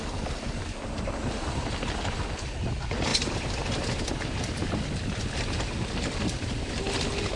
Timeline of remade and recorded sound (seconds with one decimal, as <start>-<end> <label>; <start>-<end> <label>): 0.0-7.4 recorded